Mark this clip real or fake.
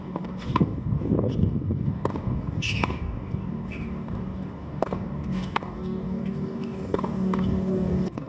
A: fake